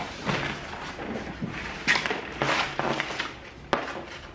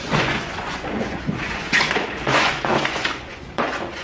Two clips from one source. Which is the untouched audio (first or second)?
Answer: first